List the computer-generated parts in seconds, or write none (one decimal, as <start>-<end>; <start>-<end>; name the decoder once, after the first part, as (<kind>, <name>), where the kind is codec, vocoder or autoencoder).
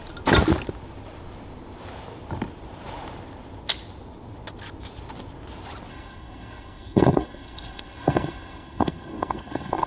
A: 5.9-9.9 (codec, SNAC)